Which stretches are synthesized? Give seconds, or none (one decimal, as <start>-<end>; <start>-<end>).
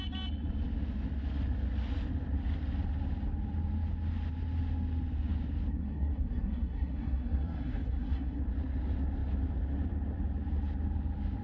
5.7-8.4